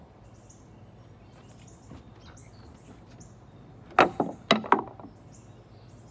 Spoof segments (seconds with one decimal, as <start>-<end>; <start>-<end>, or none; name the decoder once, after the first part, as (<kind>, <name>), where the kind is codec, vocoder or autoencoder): none